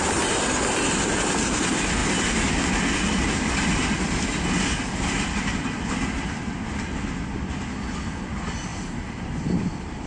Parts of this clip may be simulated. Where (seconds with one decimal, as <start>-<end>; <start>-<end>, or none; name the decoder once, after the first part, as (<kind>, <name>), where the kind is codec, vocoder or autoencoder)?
none